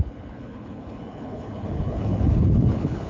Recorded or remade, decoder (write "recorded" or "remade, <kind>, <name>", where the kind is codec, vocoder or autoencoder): remade, codec, HILCodec